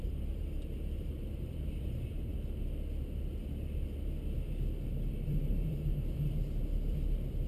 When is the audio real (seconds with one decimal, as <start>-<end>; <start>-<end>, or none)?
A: 2.3-5.1; 5.9-7.5